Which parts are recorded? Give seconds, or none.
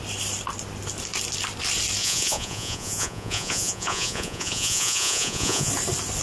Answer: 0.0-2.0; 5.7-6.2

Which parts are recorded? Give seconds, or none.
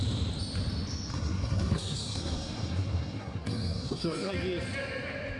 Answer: 0.0-1.1; 4.3-5.4